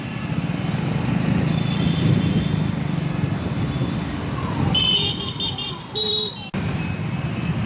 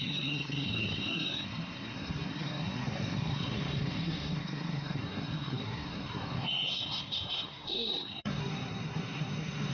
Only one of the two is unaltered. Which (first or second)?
first